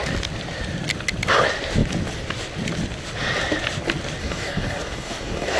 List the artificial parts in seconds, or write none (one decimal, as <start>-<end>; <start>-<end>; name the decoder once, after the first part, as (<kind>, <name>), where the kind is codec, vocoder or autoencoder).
4.2-5.6 (codec, DAC)

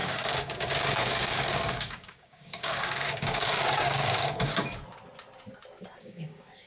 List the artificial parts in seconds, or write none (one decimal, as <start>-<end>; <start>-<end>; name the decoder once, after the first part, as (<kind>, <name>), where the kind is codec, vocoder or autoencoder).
0.0-4.5 (codec, DAC); 6.0-6.7

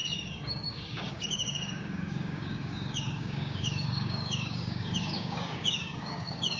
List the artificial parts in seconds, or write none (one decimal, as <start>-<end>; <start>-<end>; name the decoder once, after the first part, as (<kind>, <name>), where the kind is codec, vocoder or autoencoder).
0.0-6.6 (codec, DAC)

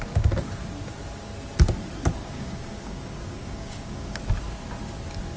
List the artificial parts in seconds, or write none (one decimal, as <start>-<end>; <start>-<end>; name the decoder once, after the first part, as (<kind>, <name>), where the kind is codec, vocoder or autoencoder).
2.2-4.2 (codec, DAC)